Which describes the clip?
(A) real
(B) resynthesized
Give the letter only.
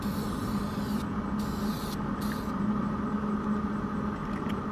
A